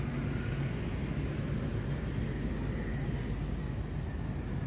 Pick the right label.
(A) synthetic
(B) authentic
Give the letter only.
B